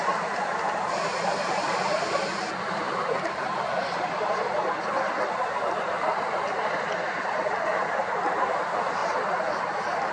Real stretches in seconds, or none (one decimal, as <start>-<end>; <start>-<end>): 0.0-10.1

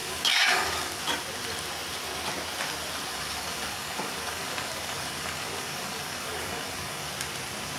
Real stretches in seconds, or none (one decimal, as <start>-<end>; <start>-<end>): 1.0-3.1; 7.1-7.8

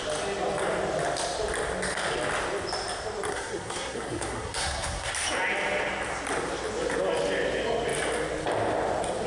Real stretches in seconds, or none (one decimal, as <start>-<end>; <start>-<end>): 0.0-3.3; 5.1-9.3

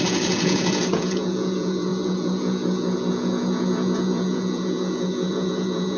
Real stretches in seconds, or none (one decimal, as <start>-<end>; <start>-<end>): none